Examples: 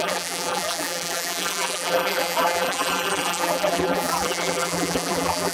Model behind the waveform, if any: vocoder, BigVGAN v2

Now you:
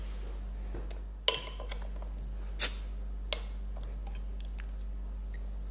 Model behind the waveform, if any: none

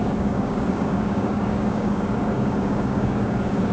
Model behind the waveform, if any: codec, DAC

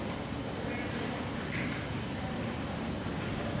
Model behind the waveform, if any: vocoder, BigVGAN v2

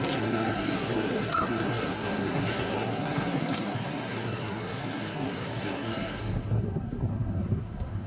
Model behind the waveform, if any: codec, SNAC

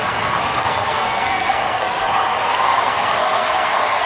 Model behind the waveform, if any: codec, SNAC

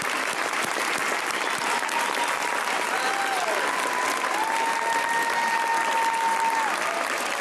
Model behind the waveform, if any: none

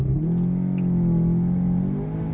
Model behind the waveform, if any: none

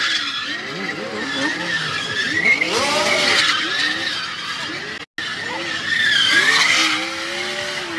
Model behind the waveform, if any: none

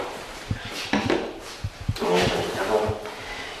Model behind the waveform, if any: none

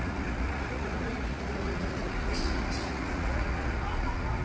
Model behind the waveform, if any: vocoder, Vocos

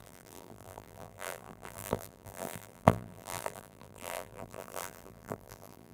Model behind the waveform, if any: vocoder, BigVGAN v2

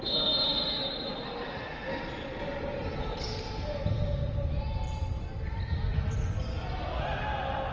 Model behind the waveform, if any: none